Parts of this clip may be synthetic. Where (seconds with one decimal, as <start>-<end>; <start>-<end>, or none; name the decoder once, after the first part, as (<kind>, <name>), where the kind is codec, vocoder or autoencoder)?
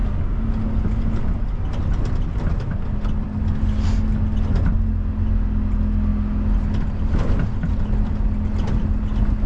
none